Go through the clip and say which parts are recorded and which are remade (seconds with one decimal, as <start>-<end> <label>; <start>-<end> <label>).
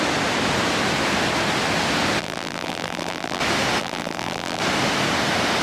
0.0-2.2 recorded; 2.2-3.4 remade; 3.4-3.8 recorded; 3.8-4.6 remade; 4.6-5.6 recorded